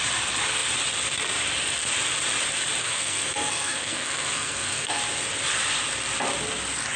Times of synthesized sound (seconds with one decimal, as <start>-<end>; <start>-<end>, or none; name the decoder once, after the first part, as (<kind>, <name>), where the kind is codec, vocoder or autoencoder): 2.8-5.0 (codec, SNAC)